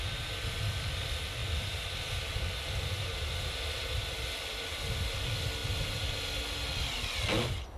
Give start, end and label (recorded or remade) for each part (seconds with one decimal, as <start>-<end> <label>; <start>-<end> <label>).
0.0-1.4 recorded; 1.4-4.6 remade; 4.6-7.8 recorded

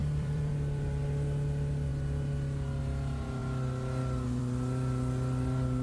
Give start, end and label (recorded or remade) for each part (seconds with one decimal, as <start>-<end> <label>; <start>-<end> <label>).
0.0-0.5 remade; 0.5-5.8 recorded

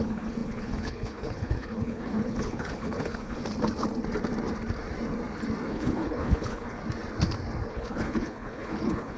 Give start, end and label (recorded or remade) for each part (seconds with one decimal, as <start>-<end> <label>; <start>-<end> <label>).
0.0-3.4 remade; 3.4-5.7 recorded; 5.7-6.8 remade; 6.8-7.7 recorded; 7.7-9.2 remade

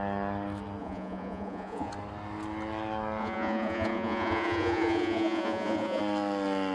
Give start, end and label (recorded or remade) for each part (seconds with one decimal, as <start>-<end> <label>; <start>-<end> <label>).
0.0-0.8 recorded; 0.8-1.9 remade; 1.9-3.2 recorded; 3.2-6.0 remade; 6.0-6.7 recorded

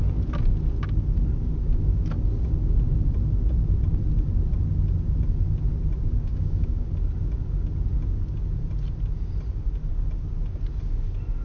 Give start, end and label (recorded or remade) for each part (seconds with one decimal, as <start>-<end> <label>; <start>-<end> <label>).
0.0-6.3 recorded; 6.3-6.9 remade; 6.9-11.4 recorded